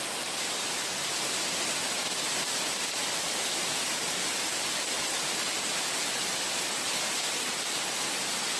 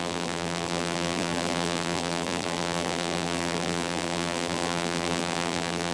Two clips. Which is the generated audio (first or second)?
second